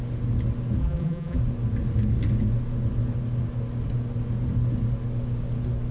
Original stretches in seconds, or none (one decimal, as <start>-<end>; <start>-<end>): 0.0-0.8; 1.4-5.9